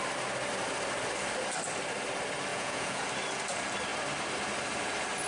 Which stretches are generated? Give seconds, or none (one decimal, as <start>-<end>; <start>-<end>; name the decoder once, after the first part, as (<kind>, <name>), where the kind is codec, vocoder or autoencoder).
2.5-3.0 (vocoder, Vocos)